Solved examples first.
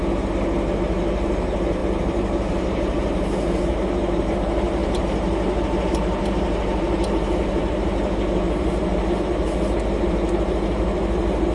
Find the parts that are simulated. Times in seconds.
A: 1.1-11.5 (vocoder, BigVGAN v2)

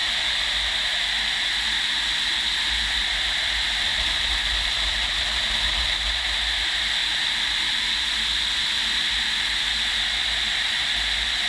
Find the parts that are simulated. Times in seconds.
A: 0.0-1.5 (vocoder, BigVGAN v2); 3.9-4.9

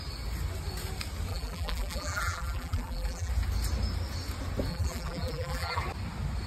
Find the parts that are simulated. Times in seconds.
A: 1.3-3.3 (vocoder, BigVGAN v2); 4.7-5.8

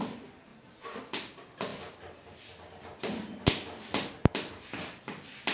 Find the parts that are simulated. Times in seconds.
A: 0.5-1.0 (vocoder, BigVGAN v2)

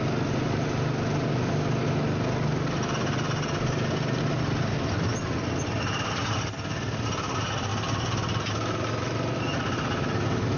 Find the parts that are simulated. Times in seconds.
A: none

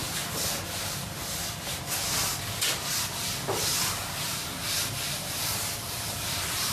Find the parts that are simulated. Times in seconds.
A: 4.0-6.7 (vocoder, BigVGAN v2)

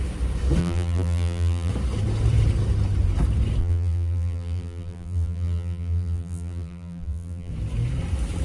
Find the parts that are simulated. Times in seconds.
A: 0.6-1.7 (vocoder, BigVGAN v2); 3.6-7.5

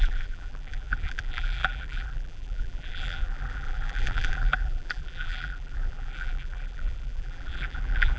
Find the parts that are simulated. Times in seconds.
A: 0.0-8.2 (vocoder, BigVGAN v2)